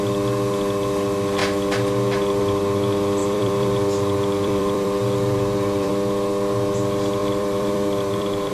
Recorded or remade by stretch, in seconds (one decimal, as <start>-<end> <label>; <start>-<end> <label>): 0.0-3.2 recorded; 3.2-5.9 remade; 5.9-7.2 recorded; 7.2-8.5 remade

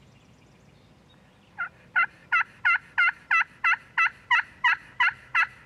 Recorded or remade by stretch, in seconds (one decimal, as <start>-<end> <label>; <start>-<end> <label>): 0.0-5.7 recorded

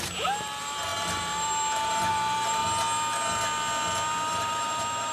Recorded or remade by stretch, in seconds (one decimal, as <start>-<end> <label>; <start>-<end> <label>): 0.0-2.6 remade; 2.6-4.3 recorded; 4.3-5.1 remade

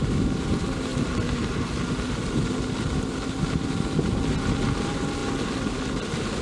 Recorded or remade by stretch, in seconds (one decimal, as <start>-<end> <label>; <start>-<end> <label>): 0.0-0.9 remade; 0.9-4.7 recorded; 4.7-5.2 remade; 5.2-6.4 recorded

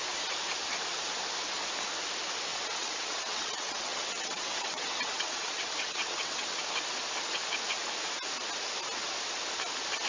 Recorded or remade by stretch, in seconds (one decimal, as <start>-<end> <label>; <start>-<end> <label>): 0.0-2.5 recorded; 2.5-6.6 remade; 6.6-10.1 recorded

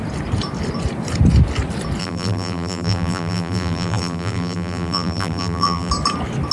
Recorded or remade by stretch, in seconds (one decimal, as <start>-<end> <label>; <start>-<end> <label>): 0.0-2.0 recorded; 2.0-5.9 remade; 5.9-6.5 recorded